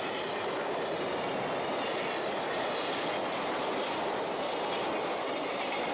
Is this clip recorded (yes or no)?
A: yes